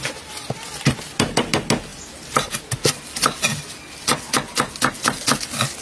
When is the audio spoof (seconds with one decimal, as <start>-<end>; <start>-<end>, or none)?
none